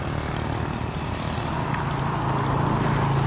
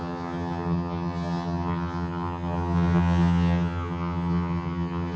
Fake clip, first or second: second